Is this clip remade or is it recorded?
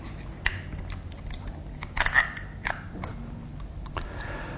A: recorded